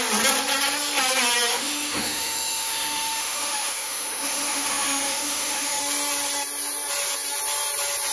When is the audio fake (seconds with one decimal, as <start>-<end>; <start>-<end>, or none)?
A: 1.5-5.8